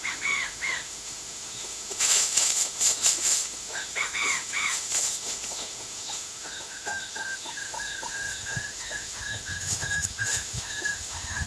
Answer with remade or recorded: remade